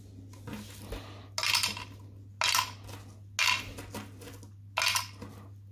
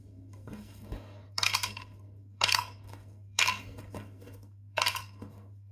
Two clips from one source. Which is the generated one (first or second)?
second